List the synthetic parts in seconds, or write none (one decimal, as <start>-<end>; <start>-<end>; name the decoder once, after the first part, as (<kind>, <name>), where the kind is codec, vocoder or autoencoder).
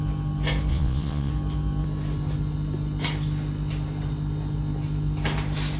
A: 0.7-1.3 (vocoder, Vocos)